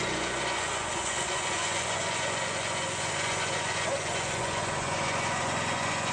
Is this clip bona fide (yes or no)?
no